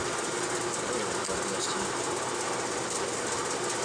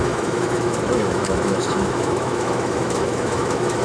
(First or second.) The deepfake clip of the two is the second